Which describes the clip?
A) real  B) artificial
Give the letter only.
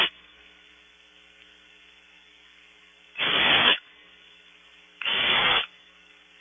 B